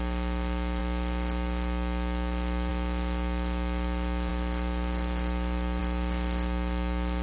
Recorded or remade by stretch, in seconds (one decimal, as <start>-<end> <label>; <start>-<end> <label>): 0.0-4.3 recorded; 4.3-5.8 remade; 5.8-7.2 recorded